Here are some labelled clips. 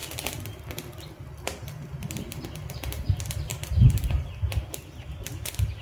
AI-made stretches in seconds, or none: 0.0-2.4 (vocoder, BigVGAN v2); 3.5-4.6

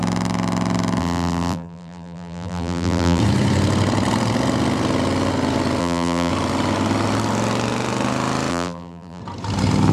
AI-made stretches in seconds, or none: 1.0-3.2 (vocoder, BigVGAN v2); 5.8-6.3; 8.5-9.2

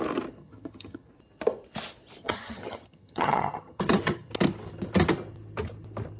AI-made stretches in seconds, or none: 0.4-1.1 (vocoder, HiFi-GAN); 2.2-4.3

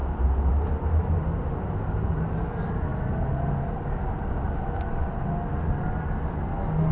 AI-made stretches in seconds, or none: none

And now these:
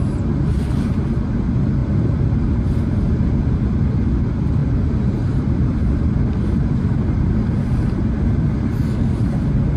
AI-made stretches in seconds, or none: none

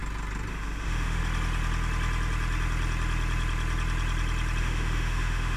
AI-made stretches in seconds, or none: 0.5-1.2 (autoencoder, DAC-VAE); 4.6-5.6